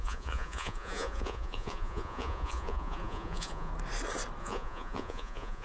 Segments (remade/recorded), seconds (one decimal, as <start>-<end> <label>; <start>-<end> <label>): 0.0-3.7 remade; 3.7-4.4 recorded; 4.4-5.6 remade